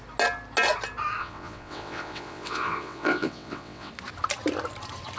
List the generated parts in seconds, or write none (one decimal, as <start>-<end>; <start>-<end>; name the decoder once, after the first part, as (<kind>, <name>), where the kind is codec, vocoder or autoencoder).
1.2-3.9 (vocoder, WaveNeXt)